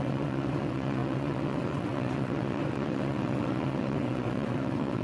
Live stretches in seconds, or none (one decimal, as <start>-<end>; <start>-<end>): none